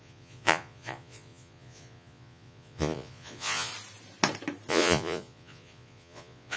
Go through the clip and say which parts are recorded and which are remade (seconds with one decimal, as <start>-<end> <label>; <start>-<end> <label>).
0.0-3.7 remade; 3.7-4.7 recorded; 4.7-6.6 remade